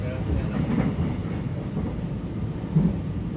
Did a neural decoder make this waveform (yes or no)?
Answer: no